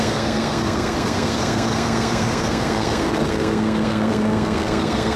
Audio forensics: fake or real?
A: fake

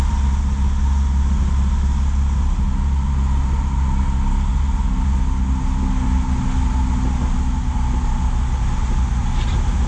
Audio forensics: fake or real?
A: real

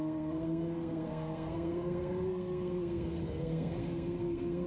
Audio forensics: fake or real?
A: fake